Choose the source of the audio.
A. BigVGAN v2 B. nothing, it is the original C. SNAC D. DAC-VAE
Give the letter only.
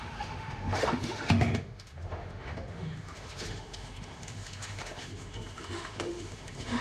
D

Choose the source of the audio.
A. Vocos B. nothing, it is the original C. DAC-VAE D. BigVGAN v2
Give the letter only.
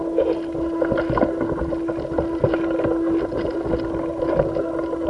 B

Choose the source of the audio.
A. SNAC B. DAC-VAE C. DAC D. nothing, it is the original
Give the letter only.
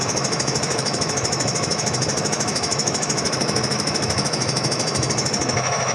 B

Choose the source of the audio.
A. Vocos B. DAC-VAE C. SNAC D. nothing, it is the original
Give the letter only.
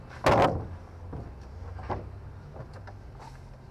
D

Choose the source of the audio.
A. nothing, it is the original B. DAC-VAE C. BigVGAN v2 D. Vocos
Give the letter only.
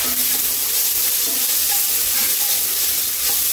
A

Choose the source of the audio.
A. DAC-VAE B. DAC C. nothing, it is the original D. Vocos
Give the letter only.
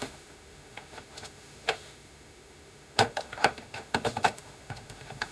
A